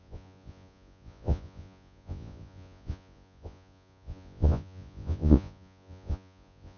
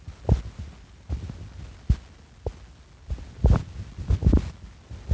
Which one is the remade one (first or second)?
first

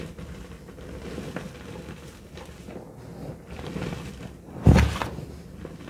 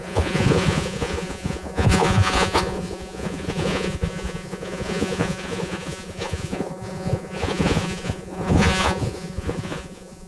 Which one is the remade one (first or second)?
second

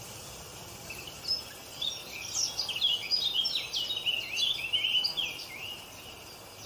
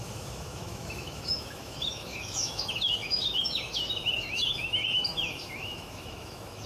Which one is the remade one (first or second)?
second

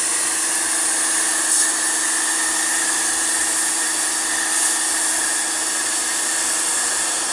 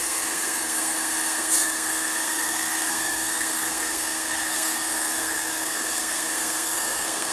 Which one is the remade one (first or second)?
second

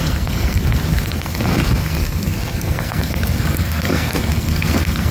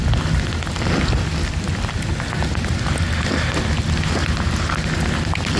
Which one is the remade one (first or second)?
first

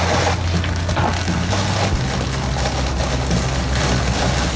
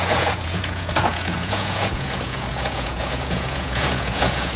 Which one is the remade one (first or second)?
second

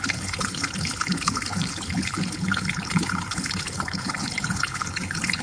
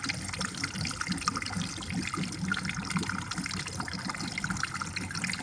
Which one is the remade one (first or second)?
first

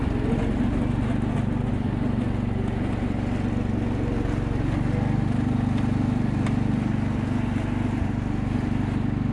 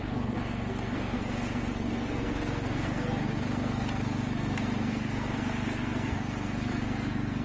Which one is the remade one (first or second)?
second